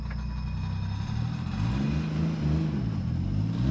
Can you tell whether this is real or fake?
real